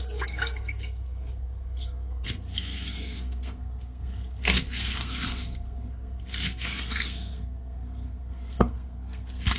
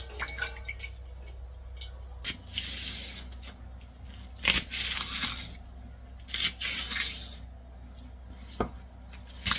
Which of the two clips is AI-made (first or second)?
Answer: first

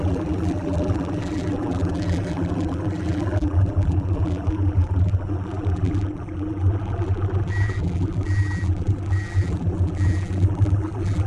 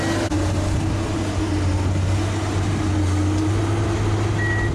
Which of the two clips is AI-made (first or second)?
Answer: first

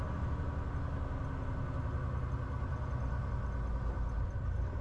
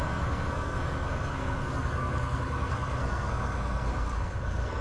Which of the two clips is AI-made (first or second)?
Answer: second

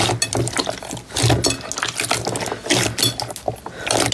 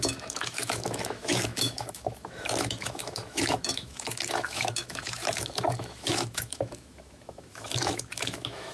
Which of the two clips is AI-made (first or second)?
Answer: second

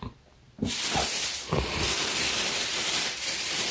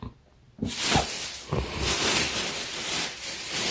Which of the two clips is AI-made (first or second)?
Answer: first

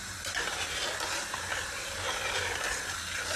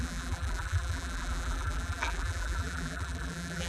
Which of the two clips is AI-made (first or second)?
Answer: second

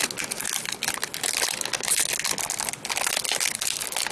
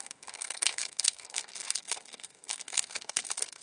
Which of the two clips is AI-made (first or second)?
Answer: second